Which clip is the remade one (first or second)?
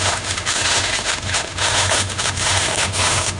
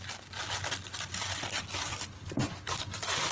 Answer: first